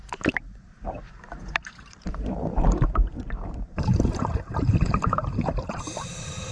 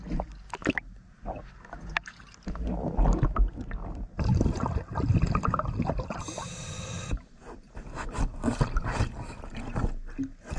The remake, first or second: first